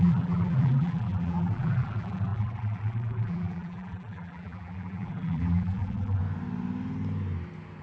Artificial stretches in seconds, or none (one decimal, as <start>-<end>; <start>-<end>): 0.0-6.2